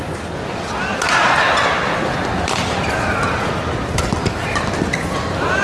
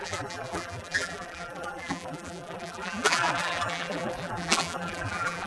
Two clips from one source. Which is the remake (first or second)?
second